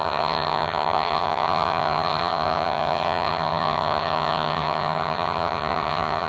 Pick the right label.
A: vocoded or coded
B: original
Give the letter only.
A